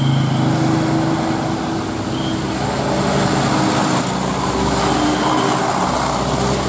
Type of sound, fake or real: real